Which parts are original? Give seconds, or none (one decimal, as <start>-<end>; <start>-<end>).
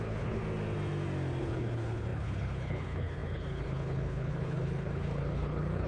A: 0.4-1.4